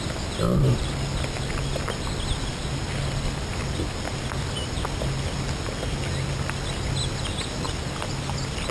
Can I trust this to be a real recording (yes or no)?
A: yes